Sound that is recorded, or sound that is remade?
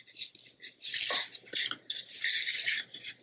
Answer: recorded